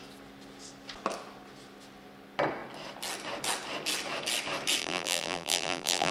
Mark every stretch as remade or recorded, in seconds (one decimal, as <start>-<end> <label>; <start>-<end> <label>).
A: 0.0-4.8 recorded; 4.8-6.1 remade